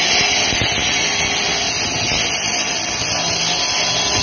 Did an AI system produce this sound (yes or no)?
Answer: no